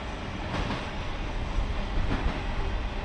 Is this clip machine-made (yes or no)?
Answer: no